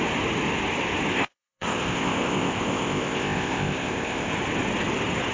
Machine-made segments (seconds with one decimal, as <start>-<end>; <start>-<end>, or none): 1.1-4.3

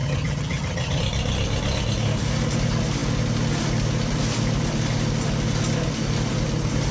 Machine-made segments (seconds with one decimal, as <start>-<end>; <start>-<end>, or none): 0.0-1.0

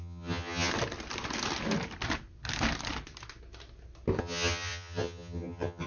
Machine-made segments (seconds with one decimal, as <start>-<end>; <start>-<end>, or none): 0.0-0.7; 4.2-5.9

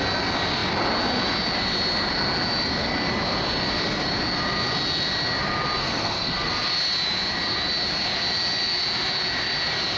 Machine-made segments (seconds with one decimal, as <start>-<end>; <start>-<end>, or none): 5.8-6.5

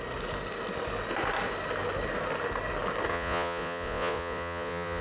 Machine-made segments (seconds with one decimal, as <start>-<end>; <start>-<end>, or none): 3.1-5.0

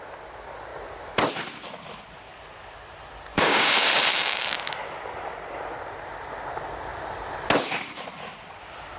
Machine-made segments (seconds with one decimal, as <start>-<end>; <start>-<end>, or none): 3.3-4.5

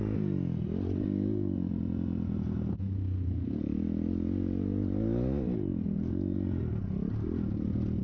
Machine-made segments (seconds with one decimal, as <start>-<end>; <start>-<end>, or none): 2.7-3.6

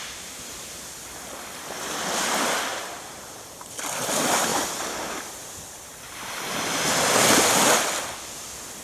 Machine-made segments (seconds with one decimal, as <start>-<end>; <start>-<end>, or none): 2.7-3.4